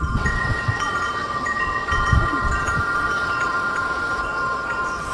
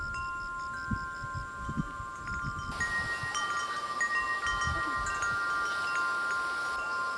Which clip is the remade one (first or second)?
first